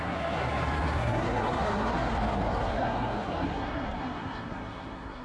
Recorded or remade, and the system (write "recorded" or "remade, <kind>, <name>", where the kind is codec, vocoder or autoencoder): remade, codec, SNAC